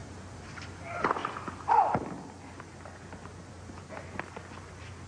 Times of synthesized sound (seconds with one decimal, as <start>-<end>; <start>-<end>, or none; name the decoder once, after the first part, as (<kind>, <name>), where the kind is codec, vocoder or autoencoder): none

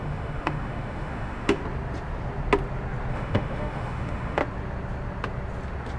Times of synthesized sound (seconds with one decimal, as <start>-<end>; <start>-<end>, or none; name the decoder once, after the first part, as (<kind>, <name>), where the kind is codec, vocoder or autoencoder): 0.0-1.6 (autoencoder, DAC-VAE); 3.1-4.4

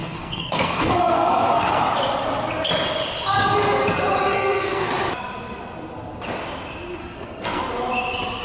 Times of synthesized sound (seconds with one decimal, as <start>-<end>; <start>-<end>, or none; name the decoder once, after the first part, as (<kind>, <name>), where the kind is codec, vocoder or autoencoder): 0.0-1.8 (codec, SNAC); 4.3-4.9; 7.0-7.6

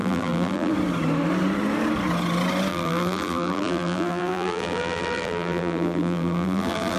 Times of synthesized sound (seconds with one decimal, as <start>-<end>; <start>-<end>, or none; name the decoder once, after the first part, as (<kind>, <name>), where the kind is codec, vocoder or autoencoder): 0.0-0.7 (vocoder, BigVGAN v2); 2.7-7.0

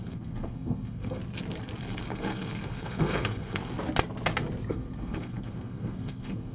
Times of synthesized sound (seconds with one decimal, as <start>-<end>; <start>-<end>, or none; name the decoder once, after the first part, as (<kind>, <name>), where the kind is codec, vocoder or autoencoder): 0.0-1.2 (codec, SNAC); 1.8-3.6; 4.7-6.5